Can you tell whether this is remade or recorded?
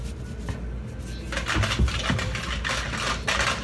recorded